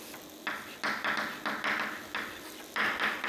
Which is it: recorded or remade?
recorded